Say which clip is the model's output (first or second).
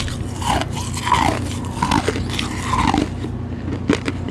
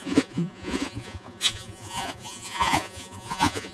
second